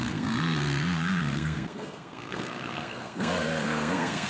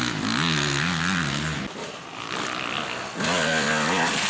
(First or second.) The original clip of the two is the second